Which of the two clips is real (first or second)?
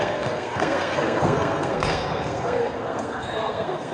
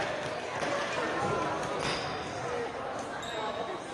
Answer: second